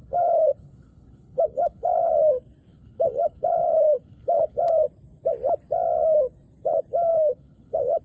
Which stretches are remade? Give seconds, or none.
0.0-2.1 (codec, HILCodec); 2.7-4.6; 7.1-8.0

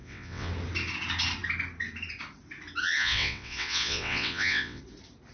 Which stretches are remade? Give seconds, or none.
0.0-0.5 (vocoder, WaveNeXt); 2.8-4.8

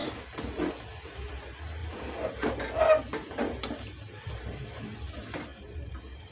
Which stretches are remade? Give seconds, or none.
5.5-6.3 (vocoder, BigVGAN v2)

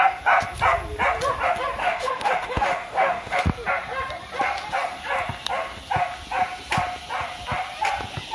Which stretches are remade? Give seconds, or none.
1.8-3.4 (autoencoder, DAC-VAE)